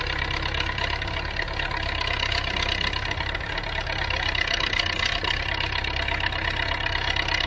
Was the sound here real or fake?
real